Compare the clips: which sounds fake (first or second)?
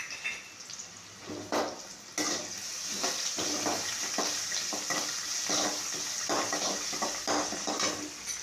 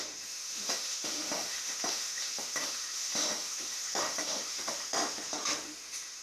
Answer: second